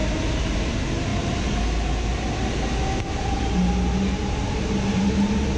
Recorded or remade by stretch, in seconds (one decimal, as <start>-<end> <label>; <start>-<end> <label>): 0.0-0.7 remade; 0.7-5.6 recorded